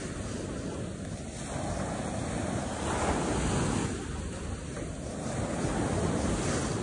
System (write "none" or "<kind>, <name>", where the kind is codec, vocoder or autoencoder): none